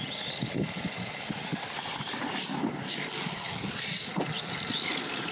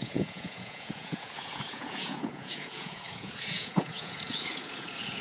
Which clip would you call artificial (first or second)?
second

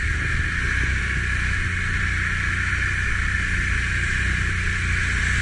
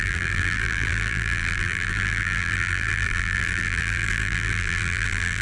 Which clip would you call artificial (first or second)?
second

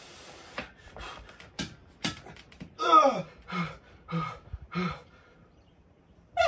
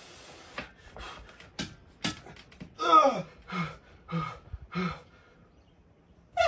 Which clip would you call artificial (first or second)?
first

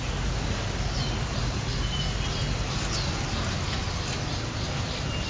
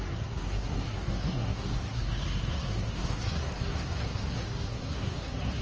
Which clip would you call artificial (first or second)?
second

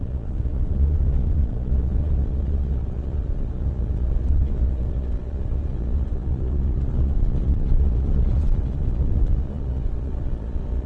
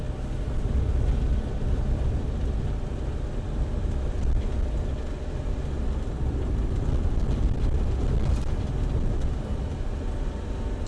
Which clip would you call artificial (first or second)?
first